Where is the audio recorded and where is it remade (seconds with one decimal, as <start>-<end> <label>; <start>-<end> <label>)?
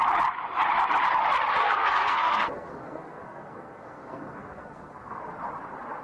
0.0-1.6 recorded; 1.6-5.2 remade; 5.2-6.0 recorded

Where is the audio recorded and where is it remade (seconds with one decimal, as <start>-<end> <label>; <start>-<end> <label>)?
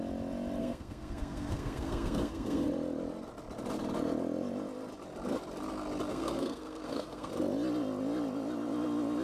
0.0-0.6 recorded; 0.6-2.7 remade; 2.7-6.1 recorded; 6.1-7.3 remade; 7.3-9.2 recorded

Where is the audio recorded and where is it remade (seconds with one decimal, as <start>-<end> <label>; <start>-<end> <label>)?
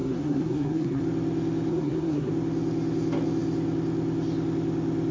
0.0-1.0 remade; 1.0-1.7 recorded; 1.7-2.3 remade; 2.3-5.1 recorded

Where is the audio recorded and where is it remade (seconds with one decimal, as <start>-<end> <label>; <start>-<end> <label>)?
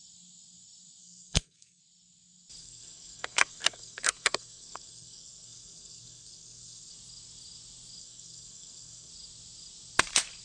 0.0-1.0 recorded; 1.0-1.8 remade; 1.8-2.6 recorded; 2.6-6.9 remade; 6.9-8.0 recorded; 8.0-9.1 remade; 9.1-10.4 recorded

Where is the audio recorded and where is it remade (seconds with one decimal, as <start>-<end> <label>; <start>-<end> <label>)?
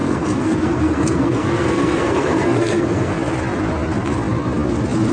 0.0-3.1 remade; 3.1-5.1 recorded